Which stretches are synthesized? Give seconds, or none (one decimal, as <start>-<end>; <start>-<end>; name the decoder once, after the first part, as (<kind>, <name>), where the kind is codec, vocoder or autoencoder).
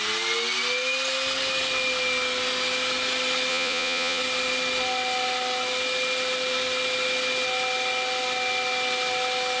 3.5-4.2 (vocoder, Vocos)